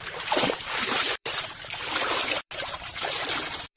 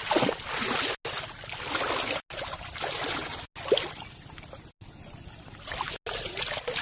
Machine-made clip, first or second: first